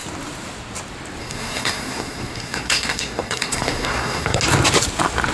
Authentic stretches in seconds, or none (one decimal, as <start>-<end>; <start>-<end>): 0.0-1.2; 4.4-5.3